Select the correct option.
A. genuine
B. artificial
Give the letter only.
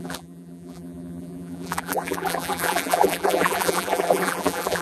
B